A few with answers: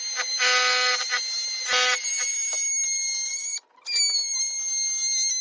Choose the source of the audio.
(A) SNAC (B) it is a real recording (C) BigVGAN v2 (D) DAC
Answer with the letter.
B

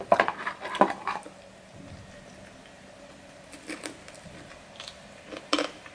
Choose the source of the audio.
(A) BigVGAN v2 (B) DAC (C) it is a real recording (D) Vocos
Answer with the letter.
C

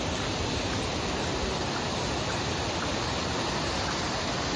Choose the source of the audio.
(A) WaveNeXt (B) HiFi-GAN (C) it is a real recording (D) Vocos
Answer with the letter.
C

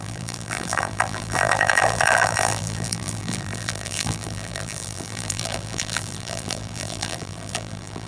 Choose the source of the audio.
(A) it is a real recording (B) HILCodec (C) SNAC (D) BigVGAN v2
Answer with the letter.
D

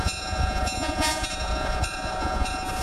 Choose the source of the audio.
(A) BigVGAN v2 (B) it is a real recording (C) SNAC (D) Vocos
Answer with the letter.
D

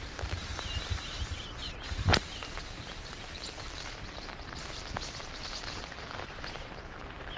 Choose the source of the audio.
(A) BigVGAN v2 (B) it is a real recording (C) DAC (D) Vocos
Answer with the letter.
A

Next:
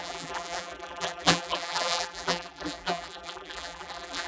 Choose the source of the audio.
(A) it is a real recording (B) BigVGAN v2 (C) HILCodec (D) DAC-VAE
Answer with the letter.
B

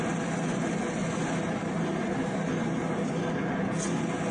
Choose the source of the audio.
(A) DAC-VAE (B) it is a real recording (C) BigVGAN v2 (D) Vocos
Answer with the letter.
B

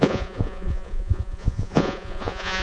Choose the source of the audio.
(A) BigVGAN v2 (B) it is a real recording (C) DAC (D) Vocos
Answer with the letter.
D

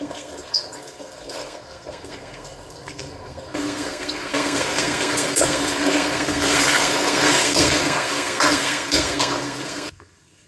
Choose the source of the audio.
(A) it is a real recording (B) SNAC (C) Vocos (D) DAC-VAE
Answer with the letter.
B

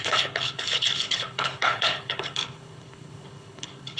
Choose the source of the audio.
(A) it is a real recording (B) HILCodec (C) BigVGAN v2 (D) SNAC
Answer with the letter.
B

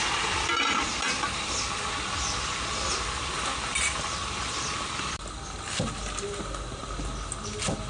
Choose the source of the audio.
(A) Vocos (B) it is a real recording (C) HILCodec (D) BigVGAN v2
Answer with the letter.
B